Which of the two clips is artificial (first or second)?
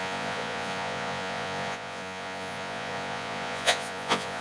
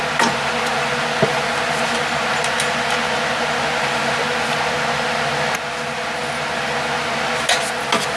first